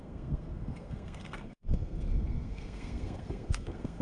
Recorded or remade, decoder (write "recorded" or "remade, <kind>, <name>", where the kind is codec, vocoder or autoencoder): remade, codec, SNAC